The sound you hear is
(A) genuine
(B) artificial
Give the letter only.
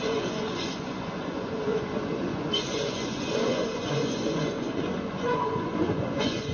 B